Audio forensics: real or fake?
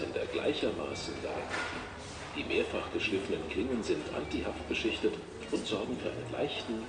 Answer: real